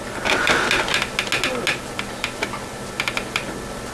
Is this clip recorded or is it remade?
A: recorded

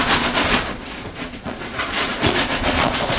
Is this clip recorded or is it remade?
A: remade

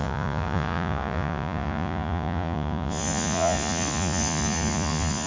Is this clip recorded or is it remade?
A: remade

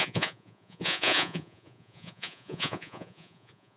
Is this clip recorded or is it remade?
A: remade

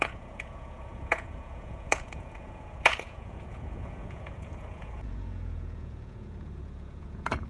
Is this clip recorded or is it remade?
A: remade